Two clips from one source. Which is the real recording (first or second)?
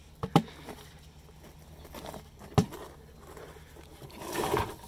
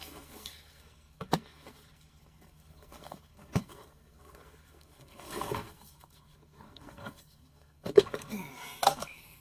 first